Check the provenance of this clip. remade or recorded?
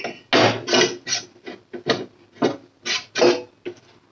recorded